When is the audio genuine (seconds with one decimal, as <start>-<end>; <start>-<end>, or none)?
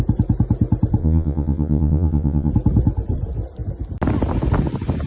0.0-1.0; 2.5-5.1